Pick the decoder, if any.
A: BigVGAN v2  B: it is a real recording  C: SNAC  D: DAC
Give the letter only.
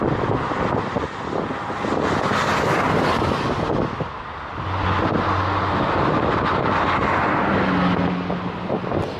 B